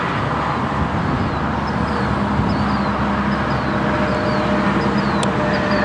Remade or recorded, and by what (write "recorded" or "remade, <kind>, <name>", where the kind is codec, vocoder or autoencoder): recorded